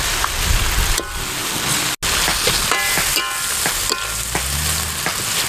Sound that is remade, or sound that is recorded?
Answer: recorded